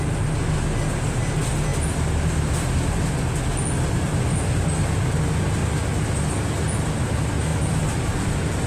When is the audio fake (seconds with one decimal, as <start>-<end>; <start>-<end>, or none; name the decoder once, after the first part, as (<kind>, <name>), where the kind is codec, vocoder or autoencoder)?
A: none